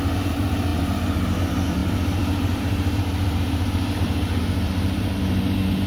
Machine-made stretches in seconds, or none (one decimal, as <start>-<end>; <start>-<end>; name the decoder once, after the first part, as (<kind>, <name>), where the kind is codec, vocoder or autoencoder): 0.0-5.9 (vocoder, BigVGAN v2)